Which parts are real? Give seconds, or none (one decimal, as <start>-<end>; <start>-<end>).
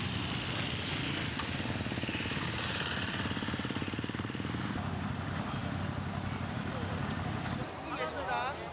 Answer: 0.0-8.7